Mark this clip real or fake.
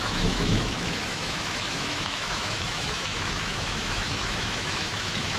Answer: fake